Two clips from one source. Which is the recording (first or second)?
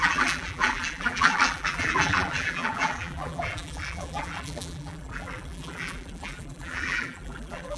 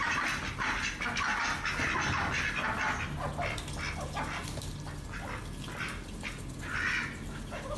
second